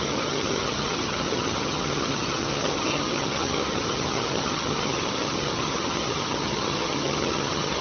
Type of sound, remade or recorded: remade